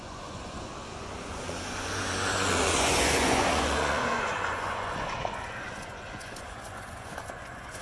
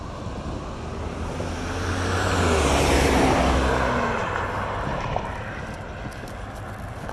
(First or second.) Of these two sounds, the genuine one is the second